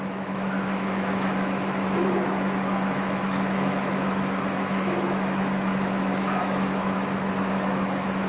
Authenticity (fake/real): fake